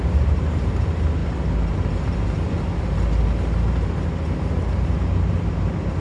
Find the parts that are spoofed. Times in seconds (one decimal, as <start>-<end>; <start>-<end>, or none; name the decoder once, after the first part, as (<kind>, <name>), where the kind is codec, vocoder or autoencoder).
none